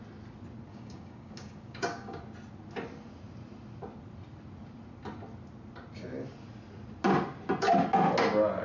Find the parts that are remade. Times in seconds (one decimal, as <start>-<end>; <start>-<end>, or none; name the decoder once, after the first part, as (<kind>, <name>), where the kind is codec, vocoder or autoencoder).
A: 0.7-2.2 (codec, DAC)